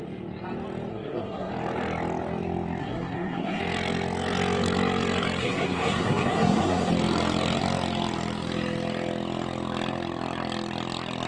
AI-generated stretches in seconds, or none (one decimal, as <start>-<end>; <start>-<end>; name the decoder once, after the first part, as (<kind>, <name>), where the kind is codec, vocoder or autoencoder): 0.9-1.5 (codec, SNAC); 2.8-3.6; 5.4-6.9